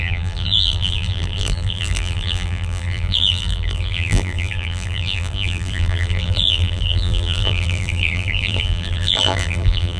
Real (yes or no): no